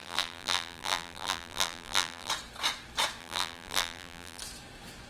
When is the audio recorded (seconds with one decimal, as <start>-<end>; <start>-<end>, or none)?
2.3-3.2; 4.4-5.1